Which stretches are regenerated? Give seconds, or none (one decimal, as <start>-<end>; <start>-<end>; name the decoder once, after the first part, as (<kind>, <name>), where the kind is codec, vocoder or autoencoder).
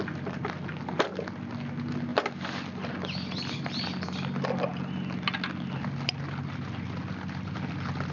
none